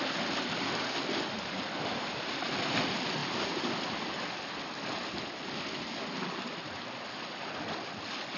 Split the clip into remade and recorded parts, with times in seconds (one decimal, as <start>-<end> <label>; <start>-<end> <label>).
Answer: 0.0-8.4 recorded